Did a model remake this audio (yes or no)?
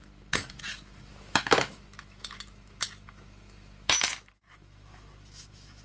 yes